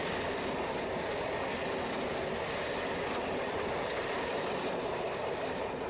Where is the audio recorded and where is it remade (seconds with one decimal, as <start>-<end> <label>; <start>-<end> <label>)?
0.0-3.5 recorded; 3.5-5.9 remade